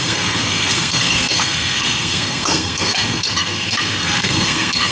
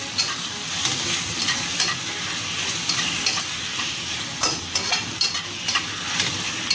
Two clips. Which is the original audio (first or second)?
second